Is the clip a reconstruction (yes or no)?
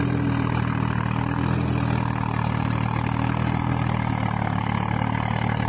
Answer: no